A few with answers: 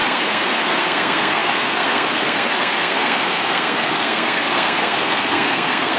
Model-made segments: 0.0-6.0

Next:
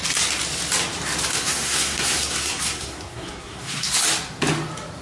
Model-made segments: 1.3-4.0

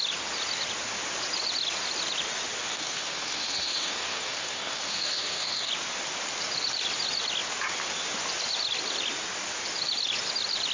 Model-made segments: 2.7-5.7

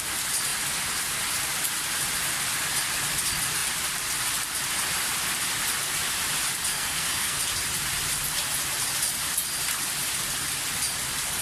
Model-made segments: 6.7-7.4